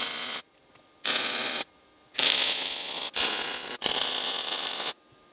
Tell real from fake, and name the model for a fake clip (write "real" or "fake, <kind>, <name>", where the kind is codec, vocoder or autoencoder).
real